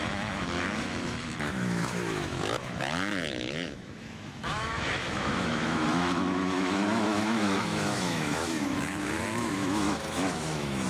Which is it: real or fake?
fake